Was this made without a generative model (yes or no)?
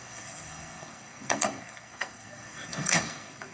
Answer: no